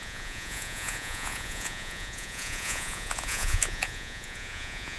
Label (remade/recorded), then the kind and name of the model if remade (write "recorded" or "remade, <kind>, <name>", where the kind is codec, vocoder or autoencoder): remade, vocoder, Vocos